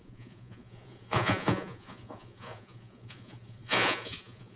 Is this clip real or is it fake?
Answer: fake